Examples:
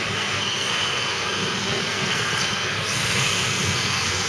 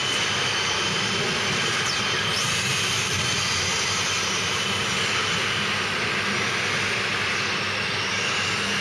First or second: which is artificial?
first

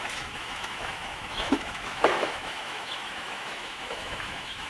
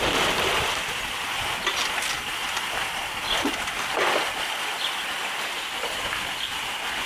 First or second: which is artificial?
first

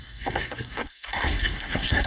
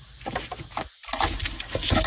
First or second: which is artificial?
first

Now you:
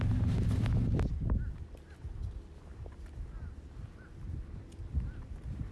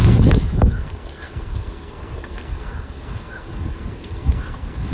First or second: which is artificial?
second